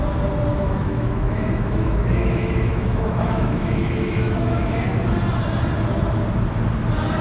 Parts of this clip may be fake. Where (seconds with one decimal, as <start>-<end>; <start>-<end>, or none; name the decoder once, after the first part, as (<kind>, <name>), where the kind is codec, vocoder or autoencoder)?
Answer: 0.5-4.8 (autoencoder, DAC-VAE)